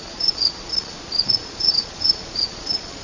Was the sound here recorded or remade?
remade